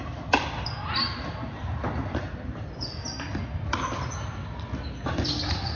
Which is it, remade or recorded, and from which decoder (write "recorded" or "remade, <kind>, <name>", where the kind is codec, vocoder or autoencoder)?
recorded